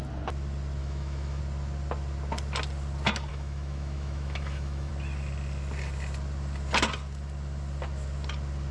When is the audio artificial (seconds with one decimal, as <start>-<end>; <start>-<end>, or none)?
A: 0.8-1.4; 3.3-4.9